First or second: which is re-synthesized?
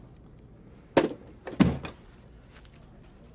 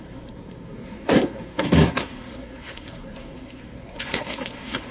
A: second